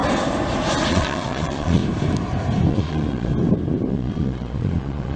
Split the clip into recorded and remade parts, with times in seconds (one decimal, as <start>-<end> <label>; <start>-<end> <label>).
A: 0.0-0.9 recorded; 0.9-1.8 remade; 1.8-2.7 recorded; 2.7-3.3 remade; 3.3-3.9 recorded; 3.9-5.2 remade